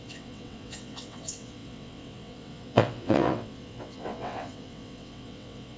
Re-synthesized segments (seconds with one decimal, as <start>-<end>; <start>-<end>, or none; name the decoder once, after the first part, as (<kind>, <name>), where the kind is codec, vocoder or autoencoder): 0.0-5.8 (vocoder, WaveNeXt)